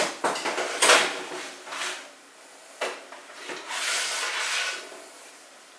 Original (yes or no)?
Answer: yes